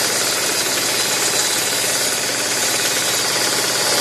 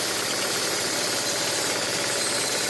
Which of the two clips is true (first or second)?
first